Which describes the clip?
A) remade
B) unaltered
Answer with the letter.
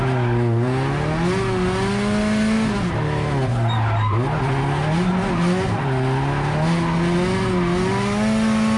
B